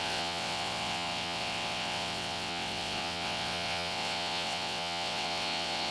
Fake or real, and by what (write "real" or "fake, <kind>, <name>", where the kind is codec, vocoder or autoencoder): fake, vocoder, WaveNeXt